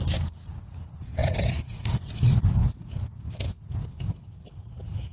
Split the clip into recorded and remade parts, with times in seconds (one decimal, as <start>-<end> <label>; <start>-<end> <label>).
0.0-1.2 recorded; 1.2-2.1 remade; 2.1-2.6 recorded; 2.6-3.3 remade; 3.3-5.1 recorded